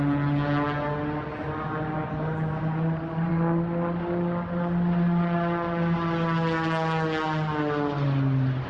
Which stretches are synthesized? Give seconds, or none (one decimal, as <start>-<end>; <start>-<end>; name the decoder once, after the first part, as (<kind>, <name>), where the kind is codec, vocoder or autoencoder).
1.3-3.3 (vocoder, BigVGAN v2)